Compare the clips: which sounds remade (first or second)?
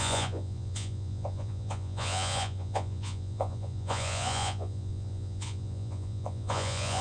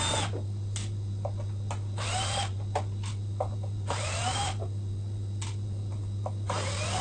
first